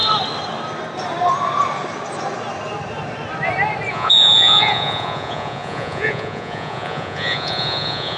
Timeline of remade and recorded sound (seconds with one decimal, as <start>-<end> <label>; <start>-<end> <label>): 0.0-3.9 recorded; 3.9-8.2 remade